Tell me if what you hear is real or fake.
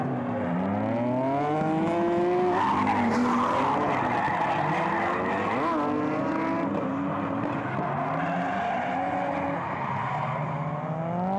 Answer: real